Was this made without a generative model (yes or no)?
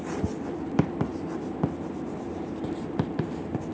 no